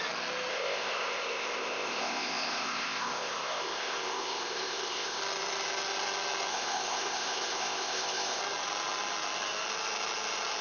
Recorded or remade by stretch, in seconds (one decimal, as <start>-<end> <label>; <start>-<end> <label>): 0.0-0.5 recorded; 0.5-5.2 remade; 5.2-6.5 recorded; 6.5-8.4 remade; 8.4-10.6 recorded